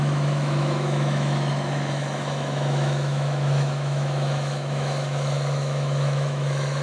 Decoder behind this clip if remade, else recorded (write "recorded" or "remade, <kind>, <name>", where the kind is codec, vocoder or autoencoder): remade, autoencoder, DAC-VAE